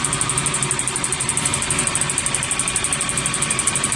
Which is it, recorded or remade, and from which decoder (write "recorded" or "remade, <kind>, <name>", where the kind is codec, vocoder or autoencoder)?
remade, vocoder, BigVGAN v2